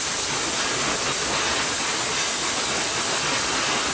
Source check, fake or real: real